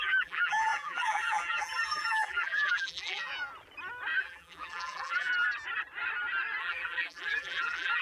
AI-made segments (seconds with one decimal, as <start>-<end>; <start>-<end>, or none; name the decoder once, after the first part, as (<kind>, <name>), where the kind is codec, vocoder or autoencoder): 0.0-3.3 (vocoder, BigVGAN v2); 4.2-5.3; 6.6-8.0